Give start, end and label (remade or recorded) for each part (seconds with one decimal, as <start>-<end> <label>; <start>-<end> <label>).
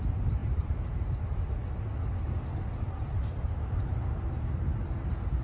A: 0.0-0.4 recorded; 0.4-1.7 remade; 1.7-3.0 recorded; 3.0-3.9 remade; 3.9-5.4 recorded